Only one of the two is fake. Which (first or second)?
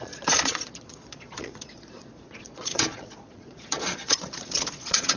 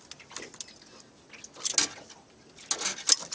first